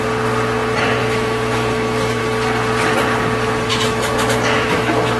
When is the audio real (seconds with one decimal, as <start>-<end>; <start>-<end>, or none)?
0.0-1.0; 2.2-3.7

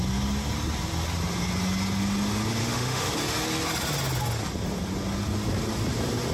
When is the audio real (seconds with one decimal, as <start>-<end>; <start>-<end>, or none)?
0.0-2.6; 3.1-6.3

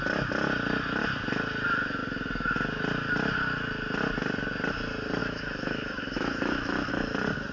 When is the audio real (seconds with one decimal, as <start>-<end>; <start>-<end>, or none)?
0.0-5.2; 6.9-7.5

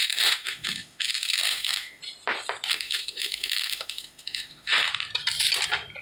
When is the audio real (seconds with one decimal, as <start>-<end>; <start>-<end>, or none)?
2.0-2.7; 4.9-6.0

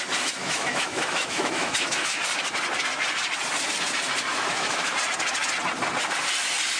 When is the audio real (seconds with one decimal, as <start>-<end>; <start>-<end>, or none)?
0.0-0.4; 2.2-4.3; 4.9-6.8